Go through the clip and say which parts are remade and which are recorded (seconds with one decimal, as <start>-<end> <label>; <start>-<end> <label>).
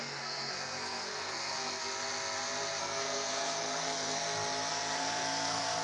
0.0-1.8 remade; 1.8-2.8 recorded; 2.8-4.2 remade; 4.2-4.7 recorded; 4.7-5.8 remade